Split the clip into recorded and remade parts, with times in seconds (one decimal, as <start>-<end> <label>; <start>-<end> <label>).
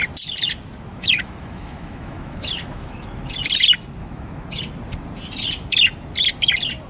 0.0-0.9 recorded; 0.9-3.3 remade; 3.3-4.0 recorded; 4.0-4.6 remade; 4.6-6.9 recorded